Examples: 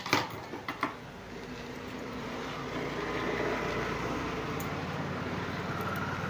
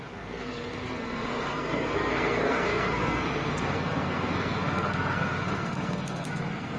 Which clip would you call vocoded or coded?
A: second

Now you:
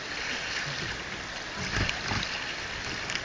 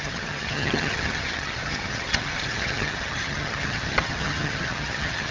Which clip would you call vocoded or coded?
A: second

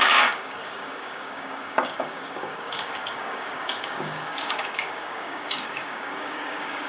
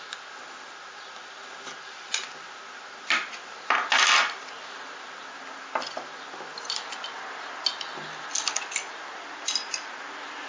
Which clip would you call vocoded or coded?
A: first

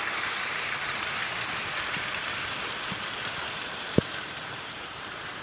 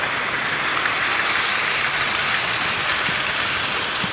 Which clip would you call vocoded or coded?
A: first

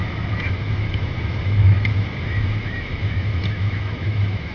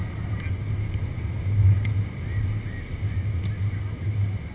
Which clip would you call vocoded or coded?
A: first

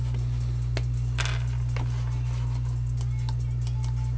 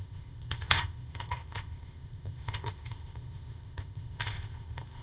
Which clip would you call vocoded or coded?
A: second